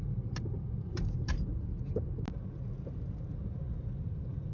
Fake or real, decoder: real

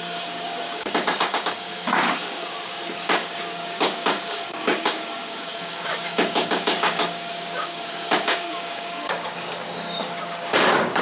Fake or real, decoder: fake, codec, DAC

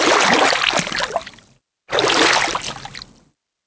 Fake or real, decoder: real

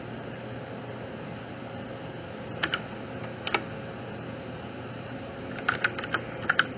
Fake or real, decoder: real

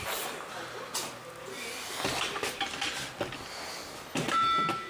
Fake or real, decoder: real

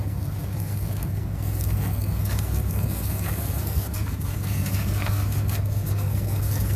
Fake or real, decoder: fake, codec, SNAC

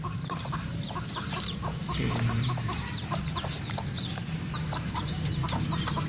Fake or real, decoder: fake, vocoder, BigVGAN v2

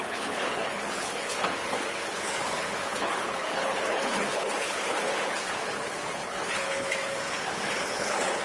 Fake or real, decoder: fake, codec, HILCodec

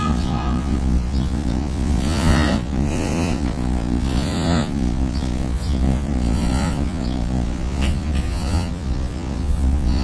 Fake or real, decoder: fake, vocoder, Vocos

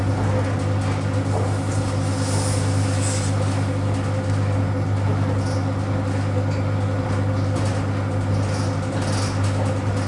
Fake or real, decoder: real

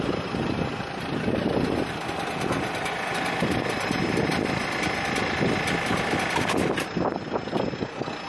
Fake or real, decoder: real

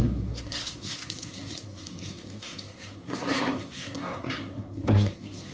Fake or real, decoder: fake, codec, SNAC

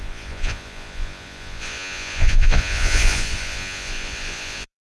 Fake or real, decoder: fake, vocoder, Vocos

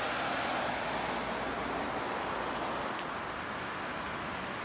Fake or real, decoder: real